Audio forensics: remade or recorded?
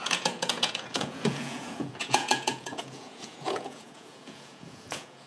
remade